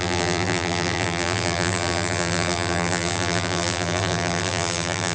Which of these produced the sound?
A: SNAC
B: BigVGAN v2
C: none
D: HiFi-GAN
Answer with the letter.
B